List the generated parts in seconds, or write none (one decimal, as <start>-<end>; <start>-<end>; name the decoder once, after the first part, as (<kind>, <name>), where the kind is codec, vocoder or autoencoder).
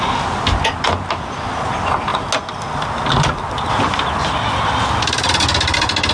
none